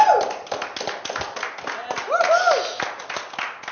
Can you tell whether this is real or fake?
real